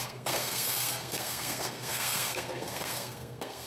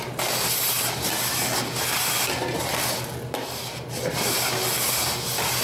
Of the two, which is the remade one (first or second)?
first